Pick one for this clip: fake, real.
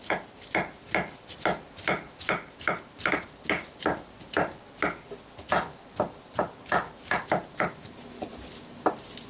real